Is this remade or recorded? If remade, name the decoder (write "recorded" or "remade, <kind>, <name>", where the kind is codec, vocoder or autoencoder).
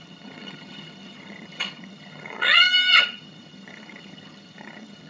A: remade, vocoder, HiFi-GAN